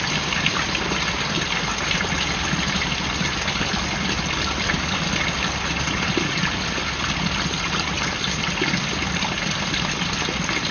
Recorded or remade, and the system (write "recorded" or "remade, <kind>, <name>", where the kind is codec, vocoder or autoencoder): recorded